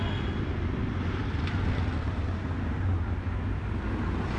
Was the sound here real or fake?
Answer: real